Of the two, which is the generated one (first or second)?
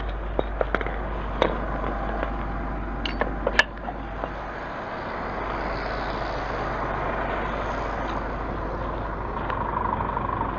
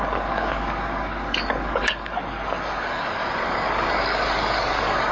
second